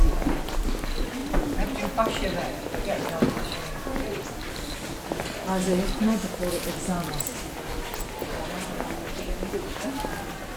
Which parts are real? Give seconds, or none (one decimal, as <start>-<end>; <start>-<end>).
0.0-10.6